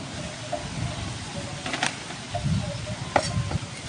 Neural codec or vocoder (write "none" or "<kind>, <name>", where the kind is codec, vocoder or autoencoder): none